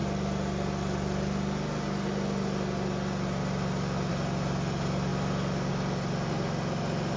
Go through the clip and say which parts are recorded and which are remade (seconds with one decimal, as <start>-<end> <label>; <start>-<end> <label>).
0.0-7.2 recorded